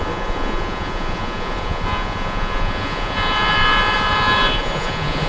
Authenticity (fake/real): fake